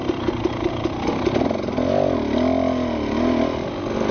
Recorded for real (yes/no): yes